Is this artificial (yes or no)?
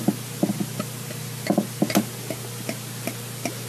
no